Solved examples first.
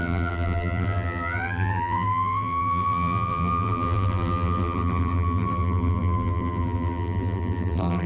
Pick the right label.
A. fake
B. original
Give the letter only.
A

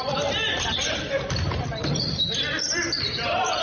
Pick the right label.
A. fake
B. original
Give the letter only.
A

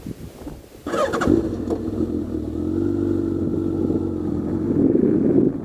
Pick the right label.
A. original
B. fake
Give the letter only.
A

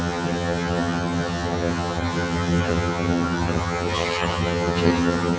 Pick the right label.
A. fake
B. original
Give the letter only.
A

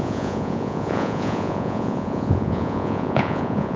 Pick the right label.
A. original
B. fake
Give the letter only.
B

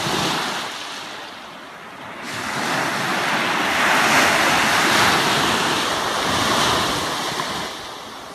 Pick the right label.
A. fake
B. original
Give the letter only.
B